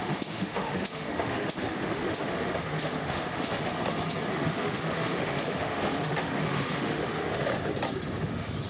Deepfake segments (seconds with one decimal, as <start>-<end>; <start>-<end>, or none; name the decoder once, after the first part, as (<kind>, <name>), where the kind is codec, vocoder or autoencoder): 0.0-3.7 (autoencoder, DAC-VAE); 4.3-7.5; 8.2-8.7